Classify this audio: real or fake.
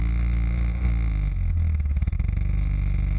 real